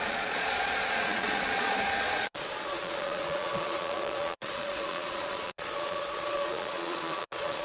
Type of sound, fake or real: fake